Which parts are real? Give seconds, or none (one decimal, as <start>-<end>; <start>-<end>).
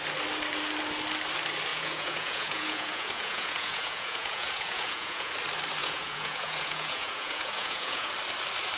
0.0-1.7; 5.3-5.8; 8.1-8.8